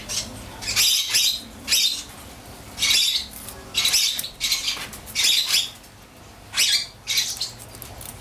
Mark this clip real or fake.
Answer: real